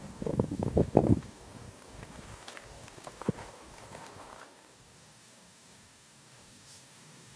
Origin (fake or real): fake